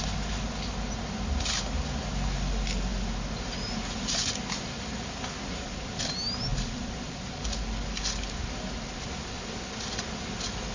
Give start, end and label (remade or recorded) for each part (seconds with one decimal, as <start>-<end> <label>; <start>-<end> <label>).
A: 0.0-6.5 recorded; 6.5-10.1 remade; 10.1-10.7 recorded